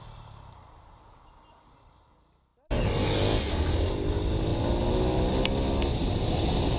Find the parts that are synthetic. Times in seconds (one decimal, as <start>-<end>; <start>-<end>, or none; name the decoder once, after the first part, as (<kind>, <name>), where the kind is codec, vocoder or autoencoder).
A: none